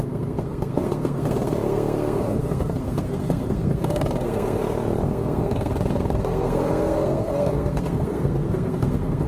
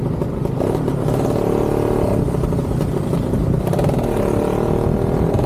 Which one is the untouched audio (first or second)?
second